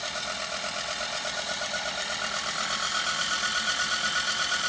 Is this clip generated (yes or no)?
no